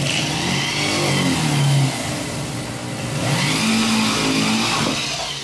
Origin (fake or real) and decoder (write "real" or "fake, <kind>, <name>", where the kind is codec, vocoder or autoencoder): real